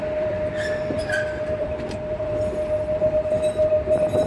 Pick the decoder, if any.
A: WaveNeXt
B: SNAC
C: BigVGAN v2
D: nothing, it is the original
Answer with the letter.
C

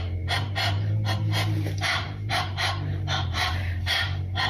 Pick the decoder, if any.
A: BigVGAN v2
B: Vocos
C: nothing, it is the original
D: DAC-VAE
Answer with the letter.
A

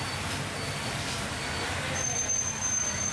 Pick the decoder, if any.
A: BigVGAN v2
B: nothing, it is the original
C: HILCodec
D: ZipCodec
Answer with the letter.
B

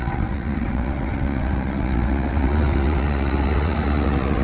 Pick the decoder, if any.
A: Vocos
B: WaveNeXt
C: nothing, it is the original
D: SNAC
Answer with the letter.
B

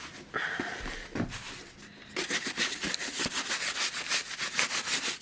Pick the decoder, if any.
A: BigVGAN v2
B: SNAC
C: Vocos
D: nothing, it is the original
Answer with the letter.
D